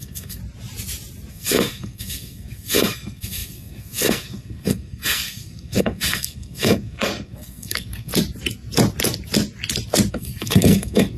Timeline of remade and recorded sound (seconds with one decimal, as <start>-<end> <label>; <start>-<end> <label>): 0.0-0.4 remade; 0.4-1.3 recorded; 1.3-8.1 remade; 8.1-10.1 recorded; 10.1-11.2 remade